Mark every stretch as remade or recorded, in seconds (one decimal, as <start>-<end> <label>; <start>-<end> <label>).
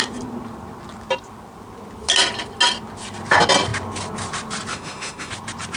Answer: 0.0-4.7 recorded; 4.7-5.3 remade; 5.3-5.8 recorded